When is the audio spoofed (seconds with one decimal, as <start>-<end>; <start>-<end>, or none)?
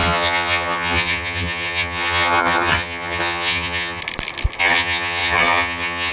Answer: 0.0-4.0; 4.6-6.1